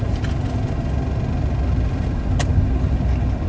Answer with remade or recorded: recorded